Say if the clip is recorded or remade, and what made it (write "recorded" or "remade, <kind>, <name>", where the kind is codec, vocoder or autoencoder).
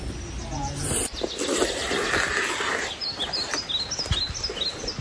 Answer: recorded